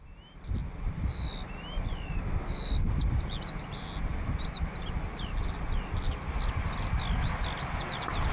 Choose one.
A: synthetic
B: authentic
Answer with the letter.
B